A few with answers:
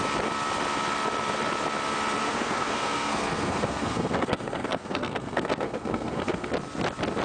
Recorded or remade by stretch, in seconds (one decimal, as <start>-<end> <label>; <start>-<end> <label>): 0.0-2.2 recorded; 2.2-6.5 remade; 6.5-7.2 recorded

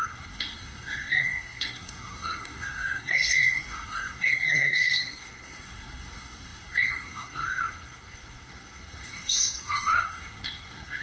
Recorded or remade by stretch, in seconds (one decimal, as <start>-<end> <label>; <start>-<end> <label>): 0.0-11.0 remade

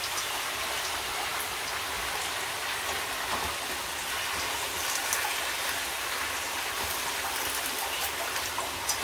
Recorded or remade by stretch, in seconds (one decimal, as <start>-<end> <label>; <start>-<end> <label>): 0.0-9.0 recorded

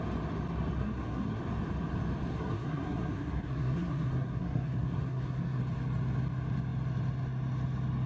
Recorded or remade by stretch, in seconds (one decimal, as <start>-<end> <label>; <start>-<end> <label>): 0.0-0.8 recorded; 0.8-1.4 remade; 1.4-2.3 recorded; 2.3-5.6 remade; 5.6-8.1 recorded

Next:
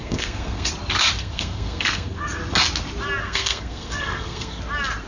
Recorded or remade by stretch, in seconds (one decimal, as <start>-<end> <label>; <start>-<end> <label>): 0.0-0.7 remade; 0.7-1.2 recorded; 1.2-2.4 remade; 2.4-3.2 recorded; 3.2-4.6 remade; 4.6-5.1 recorded